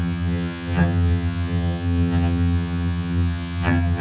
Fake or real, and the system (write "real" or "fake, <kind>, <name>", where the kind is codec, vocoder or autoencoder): fake, vocoder, HiFi-GAN